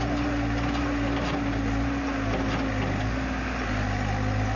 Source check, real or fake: real